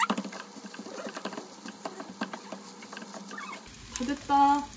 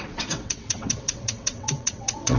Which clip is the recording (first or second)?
first